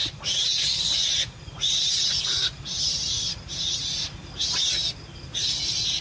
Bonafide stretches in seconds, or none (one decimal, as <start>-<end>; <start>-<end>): 0.0-6.0